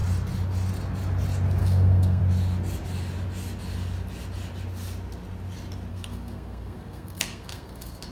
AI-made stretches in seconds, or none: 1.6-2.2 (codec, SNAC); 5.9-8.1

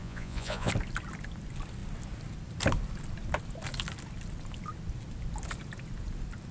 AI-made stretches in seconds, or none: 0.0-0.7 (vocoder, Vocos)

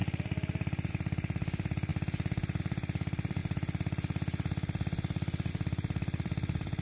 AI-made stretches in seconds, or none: 0.0-3.4 (vocoder, BigVGAN v2); 5.5-6.8